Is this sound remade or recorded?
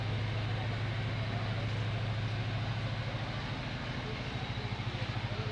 recorded